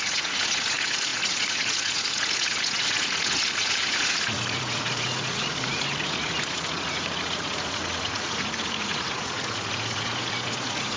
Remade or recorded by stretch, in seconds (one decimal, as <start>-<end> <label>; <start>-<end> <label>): 0.0-11.0 remade